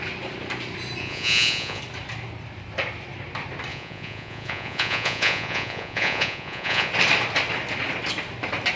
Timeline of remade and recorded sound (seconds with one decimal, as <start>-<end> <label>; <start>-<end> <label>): 0.0-1.0 recorded; 1.0-1.8 remade; 1.8-3.7 recorded; 3.7-6.9 remade; 6.9-8.8 recorded